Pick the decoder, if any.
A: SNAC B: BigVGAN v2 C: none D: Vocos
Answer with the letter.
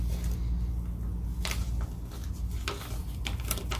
C